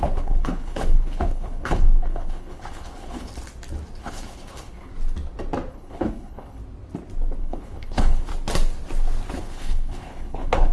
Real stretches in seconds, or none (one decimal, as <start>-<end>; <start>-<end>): 3.3-4.0; 4.9-5.7; 6.6-7.4; 8.3-9.4